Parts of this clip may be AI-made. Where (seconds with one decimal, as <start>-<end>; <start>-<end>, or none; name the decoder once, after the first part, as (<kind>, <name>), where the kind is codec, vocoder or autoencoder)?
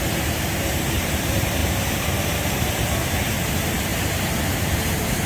0.0-5.3 (vocoder, BigVGAN v2)